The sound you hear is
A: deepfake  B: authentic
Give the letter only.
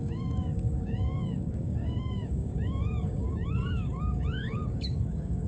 A